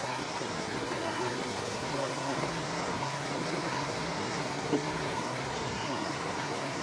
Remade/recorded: remade